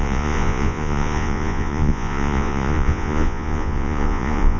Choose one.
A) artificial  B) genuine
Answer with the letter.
A